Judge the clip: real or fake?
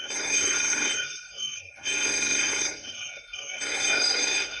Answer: fake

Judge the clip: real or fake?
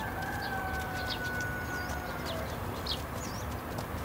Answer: real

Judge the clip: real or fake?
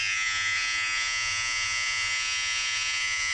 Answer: fake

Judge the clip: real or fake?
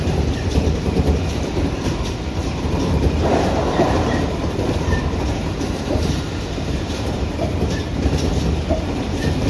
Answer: fake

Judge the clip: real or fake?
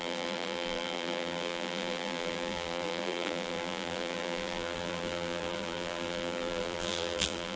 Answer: fake